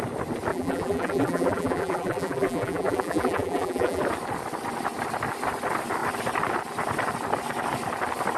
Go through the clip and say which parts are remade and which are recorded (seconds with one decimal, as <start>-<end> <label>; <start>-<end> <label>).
0.0-0.5 recorded; 0.5-4.0 remade; 4.0-8.4 recorded